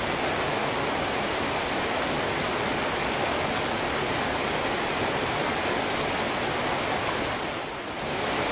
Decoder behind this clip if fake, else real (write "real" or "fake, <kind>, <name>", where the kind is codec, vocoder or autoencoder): real